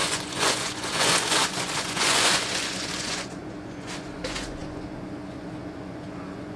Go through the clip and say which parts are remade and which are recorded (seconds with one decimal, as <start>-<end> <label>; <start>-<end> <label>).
0.0-6.6 remade